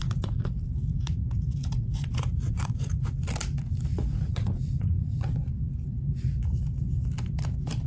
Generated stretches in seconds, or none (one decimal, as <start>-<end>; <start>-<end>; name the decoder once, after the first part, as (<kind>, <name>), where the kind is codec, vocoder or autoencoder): 0.0-3.1 (vocoder, Vocos); 3.9-5.5